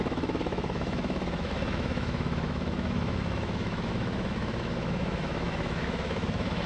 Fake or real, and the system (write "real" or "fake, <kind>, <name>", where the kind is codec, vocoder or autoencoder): fake, autoencoder, DAC-VAE